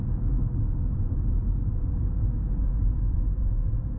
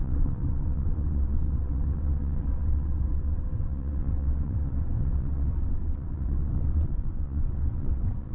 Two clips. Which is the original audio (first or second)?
first